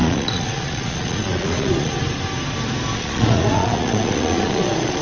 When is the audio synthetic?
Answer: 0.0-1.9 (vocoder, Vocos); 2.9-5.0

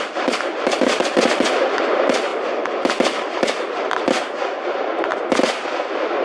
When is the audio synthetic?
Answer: 0.0-2.3 (vocoder, BigVGAN v2); 4.2-5.1

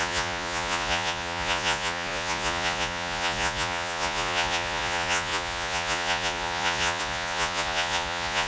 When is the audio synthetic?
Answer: 0.0-8.5 (vocoder, Vocos)